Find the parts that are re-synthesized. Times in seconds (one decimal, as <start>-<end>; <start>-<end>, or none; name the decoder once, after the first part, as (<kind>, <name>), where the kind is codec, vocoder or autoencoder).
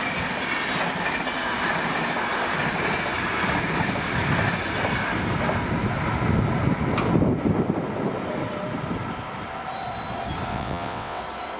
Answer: 10.5-11.2 (vocoder, WaveNeXt)